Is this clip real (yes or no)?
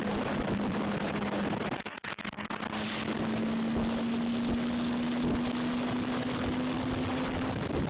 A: yes